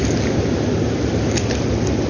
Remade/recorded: recorded